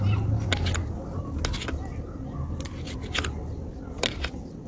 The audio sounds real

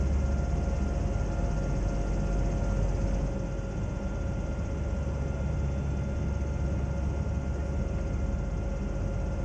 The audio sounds real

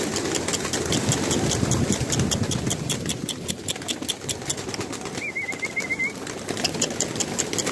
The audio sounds real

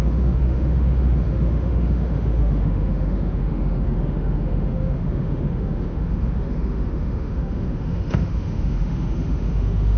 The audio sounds fake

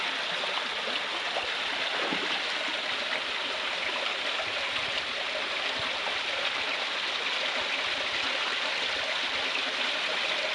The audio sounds real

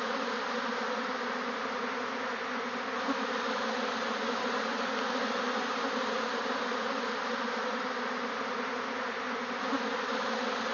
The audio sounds real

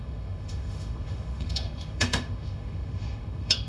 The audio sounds fake